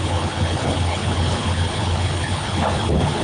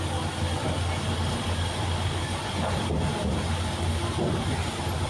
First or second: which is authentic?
second